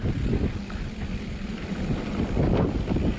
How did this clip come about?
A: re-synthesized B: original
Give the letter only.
B